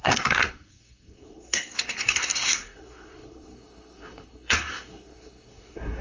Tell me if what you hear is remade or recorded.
remade